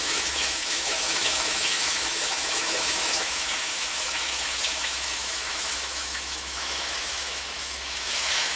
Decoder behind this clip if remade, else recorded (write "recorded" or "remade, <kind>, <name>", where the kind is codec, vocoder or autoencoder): remade, autoencoder, DAC-VAE